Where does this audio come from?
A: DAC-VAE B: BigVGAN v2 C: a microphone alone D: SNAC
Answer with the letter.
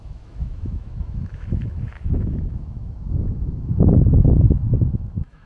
A